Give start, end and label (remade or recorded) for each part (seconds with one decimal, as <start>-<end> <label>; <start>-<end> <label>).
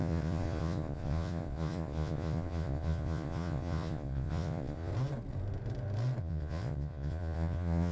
0.0-4.9 remade; 4.9-6.2 recorded; 6.2-7.9 remade